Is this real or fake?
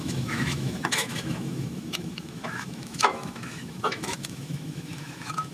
fake